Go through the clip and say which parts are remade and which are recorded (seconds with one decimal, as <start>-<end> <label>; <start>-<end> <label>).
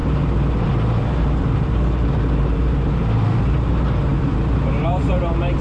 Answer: 0.0-5.6 remade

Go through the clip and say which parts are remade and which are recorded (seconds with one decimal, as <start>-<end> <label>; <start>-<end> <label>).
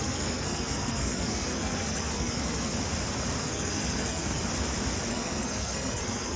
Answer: 0.0-2.7 remade; 2.7-3.4 recorded; 3.4-4.4 remade; 4.4-5.1 recorded; 5.1-6.4 remade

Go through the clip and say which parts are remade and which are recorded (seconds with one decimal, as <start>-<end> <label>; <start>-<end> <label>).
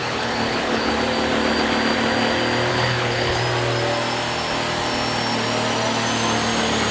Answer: 0.0-0.9 remade; 0.9-2.7 recorded; 2.7-3.4 remade; 3.4-6.9 recorded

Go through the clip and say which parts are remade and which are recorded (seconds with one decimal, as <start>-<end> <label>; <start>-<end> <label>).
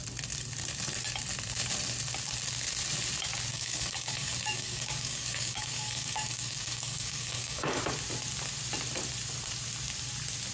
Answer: 0.0-3.5 recorded; 3.5-7.8 remade; 7.8-10.5 recorded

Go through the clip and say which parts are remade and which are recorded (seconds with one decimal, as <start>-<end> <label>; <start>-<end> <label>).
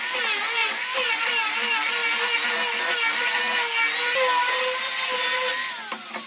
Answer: 0.0-0.6 recorded; 0.6-1.2 remade; 1.2-6.3 recorded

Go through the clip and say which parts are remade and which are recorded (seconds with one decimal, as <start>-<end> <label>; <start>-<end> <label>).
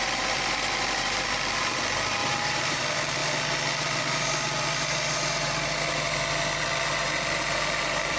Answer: 0.0-2.2 recorded; 2.2-2.8 remade; 2.8-8.2 recorded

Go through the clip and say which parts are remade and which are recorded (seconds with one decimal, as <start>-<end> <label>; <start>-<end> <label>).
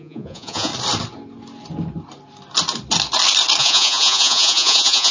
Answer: 0.0-0.7 remade; 0.7-3.6 recorded; 3.6-5.1 remade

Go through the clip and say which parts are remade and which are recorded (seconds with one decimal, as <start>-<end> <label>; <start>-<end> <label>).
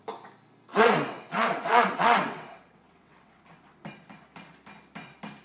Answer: 0.0-0.7 recorded; 0.7-3.4 remade; 3.4-5.4 recorded